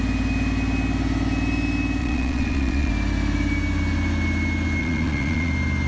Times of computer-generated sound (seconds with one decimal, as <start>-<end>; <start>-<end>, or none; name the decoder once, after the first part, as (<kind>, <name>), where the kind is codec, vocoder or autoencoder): 2.0-2.9 (vocoder, Vocos); 4.8-5.5